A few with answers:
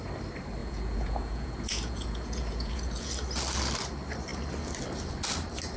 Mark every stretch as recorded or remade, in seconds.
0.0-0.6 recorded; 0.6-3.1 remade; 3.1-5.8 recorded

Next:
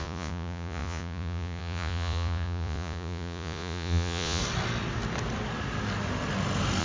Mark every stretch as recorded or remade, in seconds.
0.0-4.4 remade; 4.4-6.8 recorded

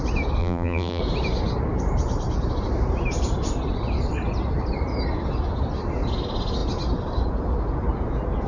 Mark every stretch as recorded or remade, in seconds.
0.0-0.4 recorded; 0.4-1.0 remade; 1.0-8.5 recorded

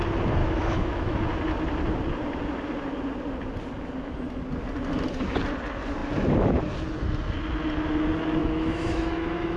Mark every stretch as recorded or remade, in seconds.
0.0-0.4 recorded; 0.4-1.2 remade; 1.2-8.4 recorded; 8.4-9.6 remade

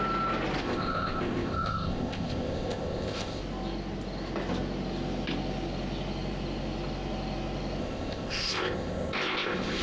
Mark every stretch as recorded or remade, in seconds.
0.0-0.6 recorded; 0.6-3.4 remade; 3.4-7.8 recorded; 7.8-9.8 remade

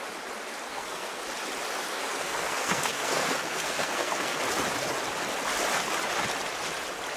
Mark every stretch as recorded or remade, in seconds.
0.0-0.7 recorded; 0.7-1.2 remade; 1.2-1.9 recorded; 1.9-4.4 remade; 4.4-7.2 recorded

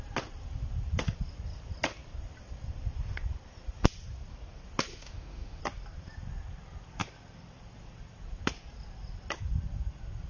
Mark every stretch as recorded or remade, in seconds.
0.0-4.9 recorded; 4.9-5.6 remade; 5.6-10.3 recorded

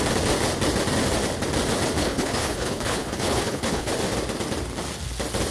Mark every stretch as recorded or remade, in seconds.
0.0-2.0 recorded; 2.0-3.9 remade; 3.9-5.5 recorded